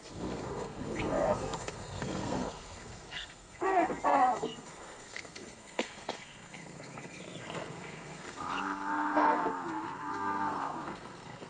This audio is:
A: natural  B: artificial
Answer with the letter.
B